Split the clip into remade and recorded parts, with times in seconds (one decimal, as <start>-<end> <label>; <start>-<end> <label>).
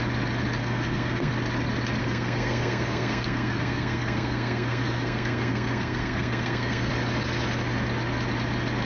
0.0-0.6 recorded; 0.6-1.3 remade; 1.3-2.0 recorded; 2.0-6.9 remade; 6.9-8.8 recorded